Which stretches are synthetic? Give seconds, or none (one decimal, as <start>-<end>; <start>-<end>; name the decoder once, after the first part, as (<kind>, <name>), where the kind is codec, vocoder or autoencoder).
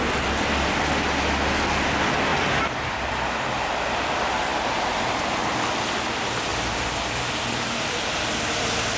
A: 2.3-3.1 (vocoder, BigVGAN v2); 6.5-8.2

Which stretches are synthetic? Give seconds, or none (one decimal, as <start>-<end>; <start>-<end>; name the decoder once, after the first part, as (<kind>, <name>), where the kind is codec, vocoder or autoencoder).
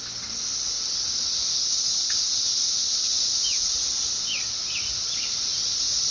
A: 0.0-3.1 (vocoder, BigVGAN v2); 3.7-6.1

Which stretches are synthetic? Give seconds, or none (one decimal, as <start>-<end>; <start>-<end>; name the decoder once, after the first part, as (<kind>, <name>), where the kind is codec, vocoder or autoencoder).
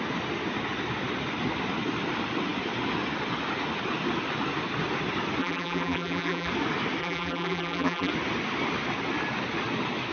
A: 5.4-6.5 (vocoder, BigVGAN v2); 7.0-8.1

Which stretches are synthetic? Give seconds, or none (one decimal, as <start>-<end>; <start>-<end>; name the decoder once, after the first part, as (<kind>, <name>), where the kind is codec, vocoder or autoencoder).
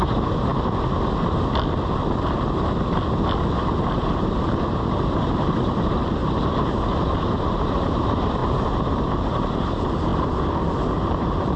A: 0.0-0.5 (vocoder, BigVGAN v2); 3.4-10.1; 10.9-11.6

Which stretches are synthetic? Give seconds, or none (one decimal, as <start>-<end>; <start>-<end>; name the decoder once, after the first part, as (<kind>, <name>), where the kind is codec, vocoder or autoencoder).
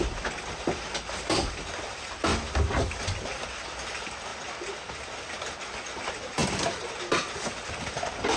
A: 0.0-2.3 (vocoder, BigVGAN v2); 3.0-4.3; 6.0-6.4; 7.7-8.4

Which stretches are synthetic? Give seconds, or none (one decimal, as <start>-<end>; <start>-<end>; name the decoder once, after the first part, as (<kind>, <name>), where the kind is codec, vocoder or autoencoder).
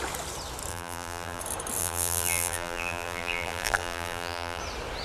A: 0.7-1.4 (vocoder, BigVGAN v2); 1.8-4.6